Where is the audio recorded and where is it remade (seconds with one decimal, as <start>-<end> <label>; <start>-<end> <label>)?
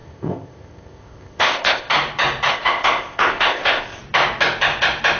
0.0-1.9 remade; 1.9-2.5 recorded; 2.5-4.0 remade; 4.0-5.2 recorded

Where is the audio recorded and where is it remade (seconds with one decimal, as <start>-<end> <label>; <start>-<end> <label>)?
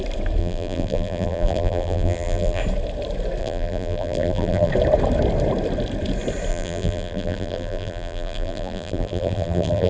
0.0-0.4 recorded; 0.4-2.6 remade; 2.6-3.4 recorded; 3.4-4.7 remade; 4.7-6.5 recorded; 6.5-9.9 remade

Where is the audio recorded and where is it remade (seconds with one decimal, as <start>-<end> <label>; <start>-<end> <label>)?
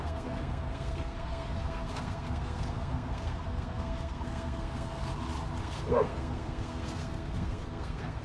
0.0-5.1 remade; 5.1-5.6 recorded; 5.6-8.2 remade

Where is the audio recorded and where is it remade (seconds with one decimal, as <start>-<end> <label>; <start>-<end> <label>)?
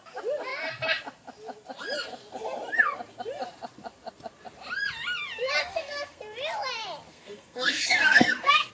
0.0-5.6 recorded; 5.6-6.2 remade; 6.2-7.1 recorded; 7.1-8.7 remade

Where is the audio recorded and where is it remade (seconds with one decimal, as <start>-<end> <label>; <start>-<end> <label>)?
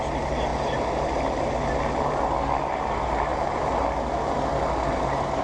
0.0-3.3 remade; 3.3-4.9 recorded; 4.9-5.4 remade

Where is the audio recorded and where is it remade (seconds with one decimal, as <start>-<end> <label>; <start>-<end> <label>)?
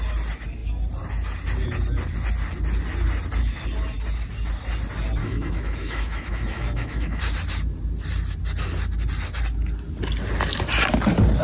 0.0-5.2 recorded; 5.2-7.2 remade; 7.2-11.4 recorded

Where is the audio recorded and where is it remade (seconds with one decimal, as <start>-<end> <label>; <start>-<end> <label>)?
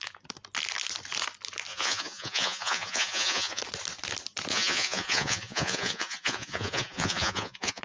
0.0-1.7 recorded; 1.7-3.6 remade; 3.6-4.5 recorded; 4.5-7.8 remade